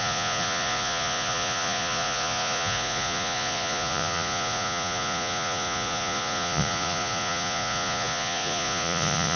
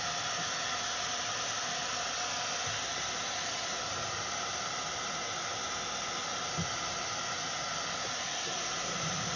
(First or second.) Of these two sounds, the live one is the second